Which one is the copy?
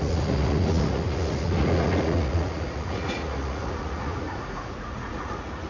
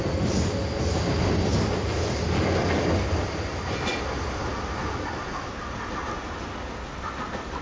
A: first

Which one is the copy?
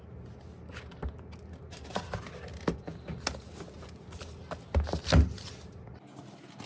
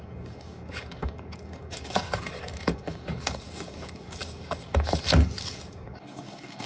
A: second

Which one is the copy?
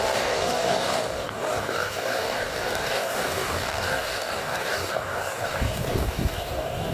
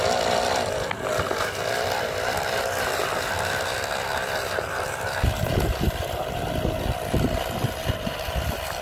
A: first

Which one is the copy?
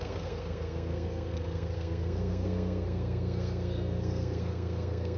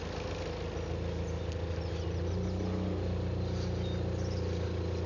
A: first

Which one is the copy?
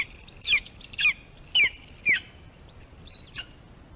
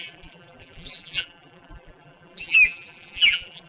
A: second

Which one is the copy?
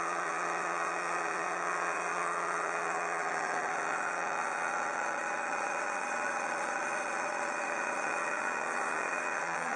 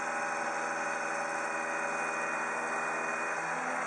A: first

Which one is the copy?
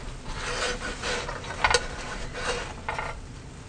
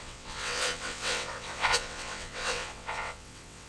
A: second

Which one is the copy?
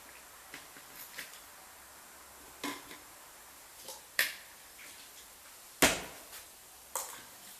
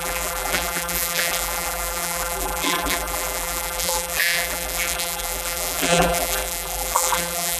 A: second